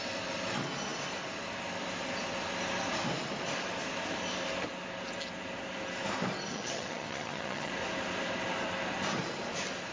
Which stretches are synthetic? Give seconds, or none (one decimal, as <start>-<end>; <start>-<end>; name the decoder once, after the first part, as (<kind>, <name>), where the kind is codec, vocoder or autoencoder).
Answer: 6.5-7.7 (vocoder, HiFi-GAN)